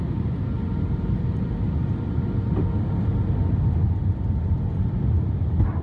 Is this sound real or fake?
real